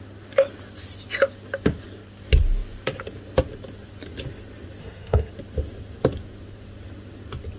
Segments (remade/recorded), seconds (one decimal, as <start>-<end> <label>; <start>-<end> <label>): 0.0-4.8 recorded; 4.8-5.3 remade; 5.3-7.6 recorded